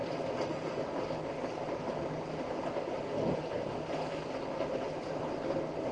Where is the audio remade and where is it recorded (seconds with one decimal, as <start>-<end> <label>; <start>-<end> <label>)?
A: 0.0-5.9 recorded